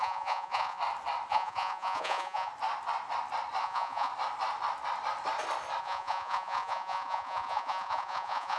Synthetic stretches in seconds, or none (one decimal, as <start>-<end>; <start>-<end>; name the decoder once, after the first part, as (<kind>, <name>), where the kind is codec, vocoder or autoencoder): 0.0-0.8 (vocoder, Vocos); 1.3-2.5; 3.6-4.1; 5.8-8.6